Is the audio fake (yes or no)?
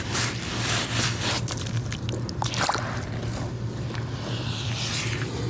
no